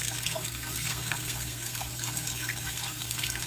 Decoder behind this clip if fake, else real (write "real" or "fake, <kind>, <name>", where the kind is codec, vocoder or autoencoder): fake, codec, SNAC